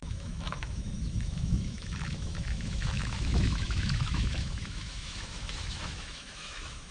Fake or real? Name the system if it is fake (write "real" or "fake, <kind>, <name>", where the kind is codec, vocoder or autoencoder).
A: fake, autoencoder, DAC-VAE